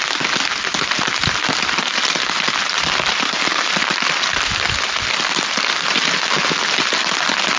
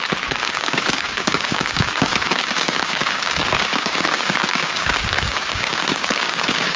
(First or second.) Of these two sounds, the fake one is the second